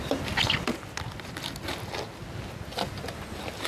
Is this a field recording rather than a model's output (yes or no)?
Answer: yes